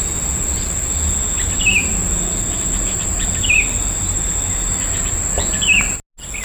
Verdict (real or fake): real